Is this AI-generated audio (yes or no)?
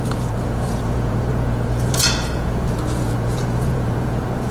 yes